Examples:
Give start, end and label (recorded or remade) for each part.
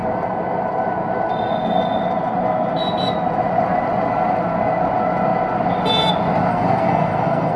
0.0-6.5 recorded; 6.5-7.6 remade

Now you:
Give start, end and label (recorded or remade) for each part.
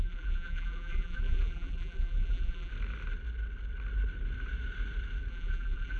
0.0-2.7 remade; 2.7-5.3 recorded; 5.3-6.0 remade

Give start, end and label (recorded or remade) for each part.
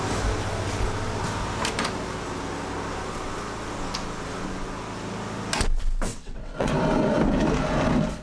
0.0-6.1 recorded; 6.1-6.7 remade; 6.7-8.2 recorded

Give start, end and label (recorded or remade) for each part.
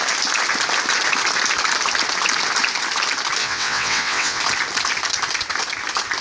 0.0-3.4 recorded; 3.4-4.4 remade; 4.4-6.2 recorded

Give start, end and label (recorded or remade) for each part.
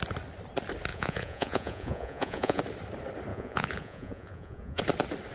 0.0-0.9 recorded; 0.9-2.6 remade; 2.6-3.3 recorded; 3.3-4.8 remade; 4.8-5.3 recorded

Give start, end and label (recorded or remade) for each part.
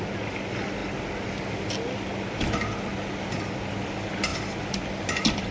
0.0-5.5 recorded